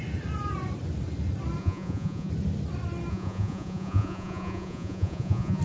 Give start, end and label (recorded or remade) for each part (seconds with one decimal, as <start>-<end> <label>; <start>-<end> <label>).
0.0-1.6 recorded; 1.6-2.3 remade; 2.3-3.1 recorded; 3.1-5.6 remade